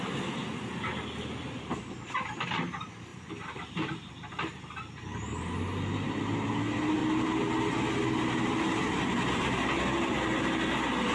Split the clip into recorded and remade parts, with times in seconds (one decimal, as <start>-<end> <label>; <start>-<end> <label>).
0.0-3.1 recorded; 3.1-4.3 remade; 4.3-7.0 recorded; 7.0-7.5 remade; 7.5-11.1 recorded